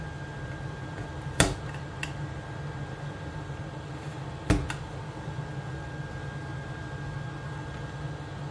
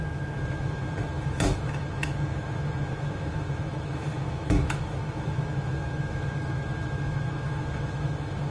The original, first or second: first